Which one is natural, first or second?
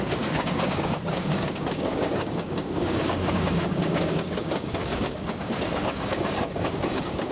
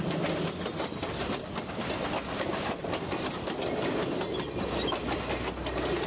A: second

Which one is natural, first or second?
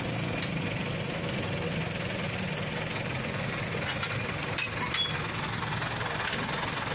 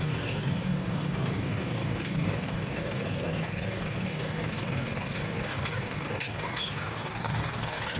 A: first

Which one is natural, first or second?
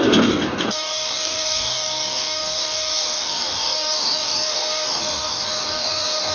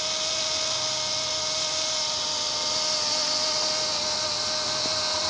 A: second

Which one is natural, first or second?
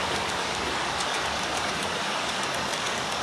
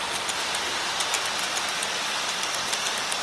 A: second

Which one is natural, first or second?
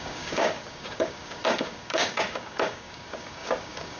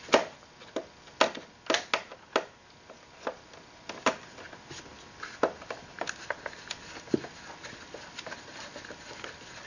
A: second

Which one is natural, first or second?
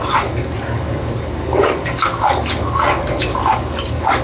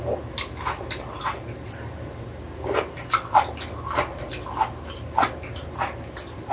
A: second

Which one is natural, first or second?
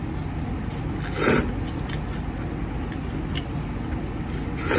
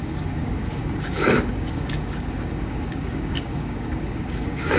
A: first